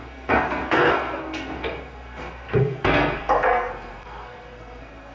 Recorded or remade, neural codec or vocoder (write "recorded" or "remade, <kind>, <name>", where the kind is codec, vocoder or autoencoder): remade, codec, SNAC